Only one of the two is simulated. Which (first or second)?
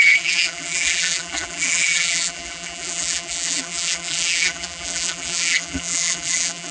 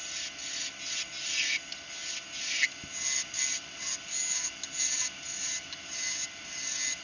first